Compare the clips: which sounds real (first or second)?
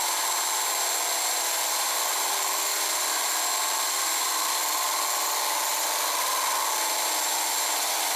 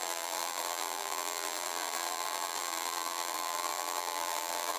first